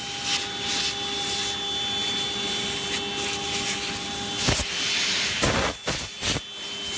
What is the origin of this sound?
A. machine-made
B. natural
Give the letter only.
B